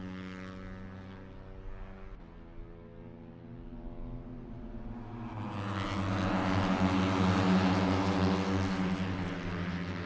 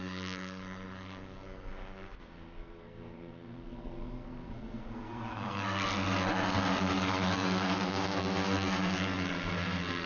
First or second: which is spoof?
second